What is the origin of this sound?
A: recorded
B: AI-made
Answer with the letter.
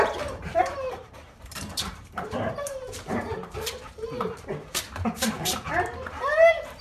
B